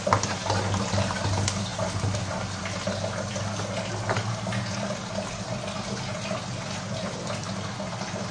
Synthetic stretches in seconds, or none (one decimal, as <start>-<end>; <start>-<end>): none